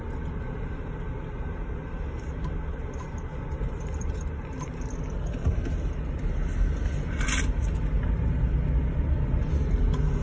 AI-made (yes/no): no